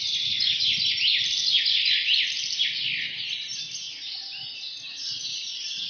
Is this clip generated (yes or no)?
no